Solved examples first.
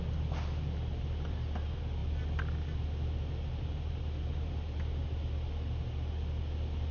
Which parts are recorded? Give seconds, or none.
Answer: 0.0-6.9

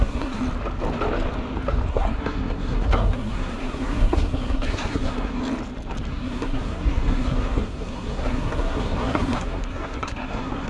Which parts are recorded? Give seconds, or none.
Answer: 0.4-1.9; 5.4-6.1